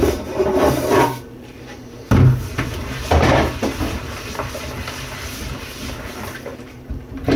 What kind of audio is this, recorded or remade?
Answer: remade